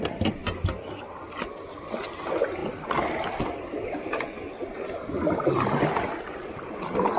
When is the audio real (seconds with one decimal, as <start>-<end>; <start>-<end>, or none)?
0.0-7.2